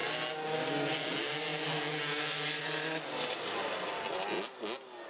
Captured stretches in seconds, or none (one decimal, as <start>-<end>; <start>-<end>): 0.0-5.1